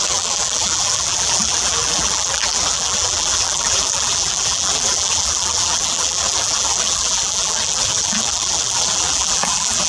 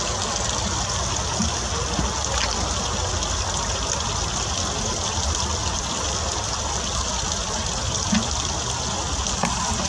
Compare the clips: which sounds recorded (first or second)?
second